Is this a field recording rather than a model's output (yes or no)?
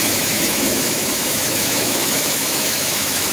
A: no